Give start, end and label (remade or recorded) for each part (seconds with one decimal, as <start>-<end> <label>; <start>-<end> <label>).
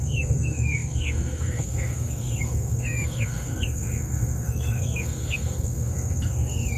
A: 0.0-6.8 remade